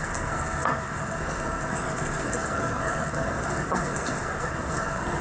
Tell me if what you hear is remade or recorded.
remade